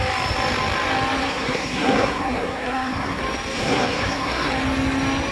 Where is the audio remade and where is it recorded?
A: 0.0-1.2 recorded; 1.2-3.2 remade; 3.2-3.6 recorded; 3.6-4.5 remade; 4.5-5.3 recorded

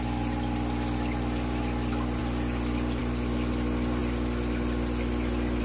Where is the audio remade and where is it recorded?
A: 0.0-5.6 recorded

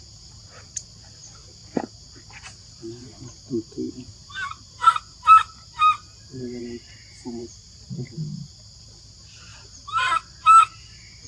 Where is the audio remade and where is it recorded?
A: 0.0-4.2 recorded; 4.2-6.6 remade; 6.6-7.4 recorded; 7.4-8.8 remade; 8.8-11.3 recorded

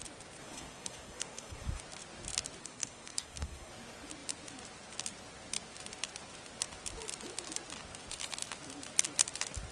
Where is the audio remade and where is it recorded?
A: 0.0-0.4 recorded; 0.4-1.8 remade; 1.8-2.6 recorded; 2.6-3.7 remade; 3.7-9.7 recorded

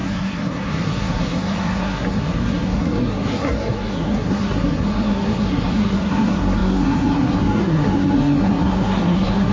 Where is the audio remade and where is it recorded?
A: 0.0-9.5 remade

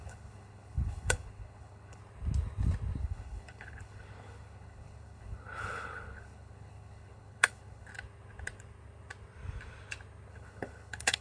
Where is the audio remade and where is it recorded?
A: 0.0-2.0 remade; 2.0-3.0 recorded; 3.0-7.9 remade; 7.9-10.3 recorded; 10.3-11.2 remade